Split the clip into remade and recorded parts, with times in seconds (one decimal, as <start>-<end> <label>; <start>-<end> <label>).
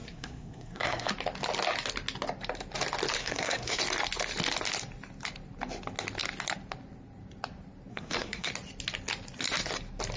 0.0-1.1 remade; 1.1-3.2 recorded; 3.2-3.8 remade; 3.8-7.9 recorded; 7.9-8.5 remade; 8.5-10.2 recorded